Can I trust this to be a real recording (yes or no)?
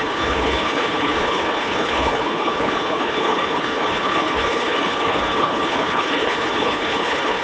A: no